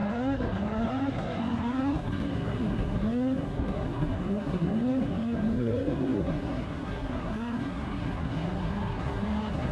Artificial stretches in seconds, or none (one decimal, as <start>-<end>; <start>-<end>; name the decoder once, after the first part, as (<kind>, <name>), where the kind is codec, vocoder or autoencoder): 0.0-9.7 (codec, SNAC)